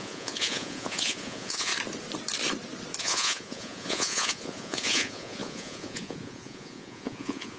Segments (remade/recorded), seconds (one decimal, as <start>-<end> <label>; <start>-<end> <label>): 0.0-1.7 remade; 1.7-3.0 recorded; 3.0-7.6 remade